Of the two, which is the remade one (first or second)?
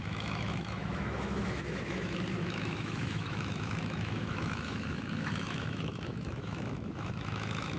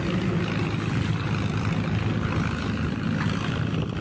first